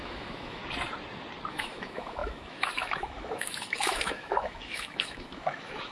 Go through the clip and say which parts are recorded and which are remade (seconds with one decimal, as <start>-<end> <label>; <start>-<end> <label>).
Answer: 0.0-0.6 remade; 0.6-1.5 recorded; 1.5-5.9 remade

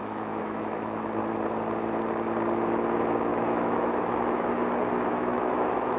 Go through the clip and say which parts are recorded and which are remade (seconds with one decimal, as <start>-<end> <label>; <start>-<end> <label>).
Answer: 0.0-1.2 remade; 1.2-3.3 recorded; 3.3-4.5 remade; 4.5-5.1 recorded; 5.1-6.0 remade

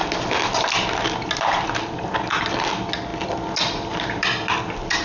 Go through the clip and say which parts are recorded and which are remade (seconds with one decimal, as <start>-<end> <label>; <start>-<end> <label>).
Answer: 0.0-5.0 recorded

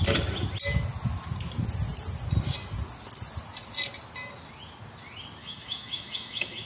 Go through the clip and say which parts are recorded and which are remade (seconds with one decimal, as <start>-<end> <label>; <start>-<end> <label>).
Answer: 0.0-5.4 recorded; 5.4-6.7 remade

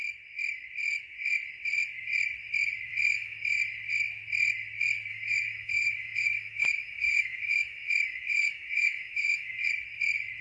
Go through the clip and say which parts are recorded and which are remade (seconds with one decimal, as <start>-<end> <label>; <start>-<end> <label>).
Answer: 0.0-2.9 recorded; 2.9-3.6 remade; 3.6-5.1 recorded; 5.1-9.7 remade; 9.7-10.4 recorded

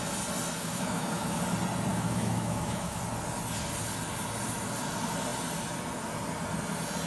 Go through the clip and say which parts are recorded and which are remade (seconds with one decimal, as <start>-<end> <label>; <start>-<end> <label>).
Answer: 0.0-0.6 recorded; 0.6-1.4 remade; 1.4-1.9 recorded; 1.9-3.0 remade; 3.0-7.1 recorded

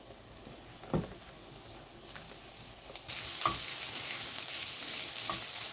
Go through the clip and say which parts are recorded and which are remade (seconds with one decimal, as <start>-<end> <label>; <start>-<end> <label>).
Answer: 0.0-3.7 recorded; 3.7-4.5 remade; 4.5-5.7 recorded

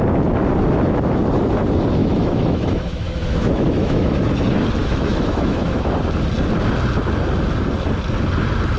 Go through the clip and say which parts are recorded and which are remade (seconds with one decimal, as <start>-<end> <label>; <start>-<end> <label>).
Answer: 0.0-2.0 recorded; 2.0-4.3 remade; 4.3-4.8 recorded; 4.8-6.0 remade; 6.0-8.8 recorded